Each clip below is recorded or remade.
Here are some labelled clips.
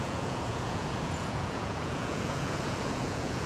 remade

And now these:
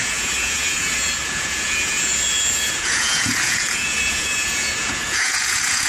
remade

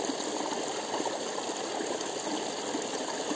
recorded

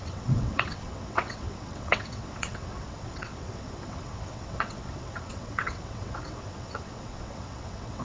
remade